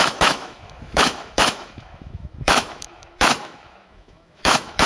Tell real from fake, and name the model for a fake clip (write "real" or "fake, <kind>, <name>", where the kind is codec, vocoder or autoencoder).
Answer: fake, autoencoder, DAC-VAE